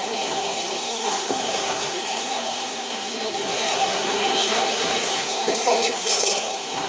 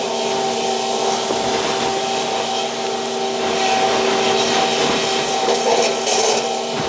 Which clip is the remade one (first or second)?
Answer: first